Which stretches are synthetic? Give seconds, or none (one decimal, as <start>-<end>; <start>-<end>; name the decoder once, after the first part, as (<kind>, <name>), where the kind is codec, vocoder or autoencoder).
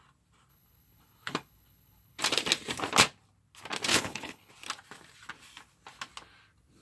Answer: 0.5-2.2 (codec, HILCodec); 3.9-4.5